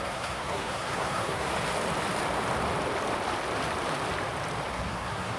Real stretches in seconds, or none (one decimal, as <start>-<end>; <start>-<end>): 1.5-4.7